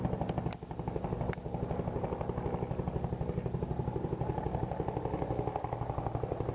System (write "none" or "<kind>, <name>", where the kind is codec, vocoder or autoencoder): none